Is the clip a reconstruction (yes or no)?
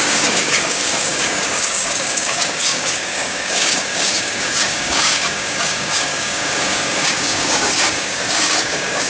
yes